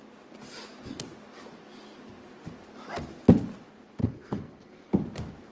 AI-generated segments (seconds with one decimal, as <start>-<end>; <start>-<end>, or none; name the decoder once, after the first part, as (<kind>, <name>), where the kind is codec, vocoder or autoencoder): 4.0-4.9 (codec, SNAC)